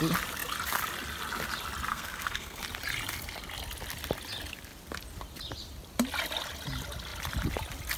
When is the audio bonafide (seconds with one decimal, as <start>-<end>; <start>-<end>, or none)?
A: 0.0-1.9; 2.6-8.0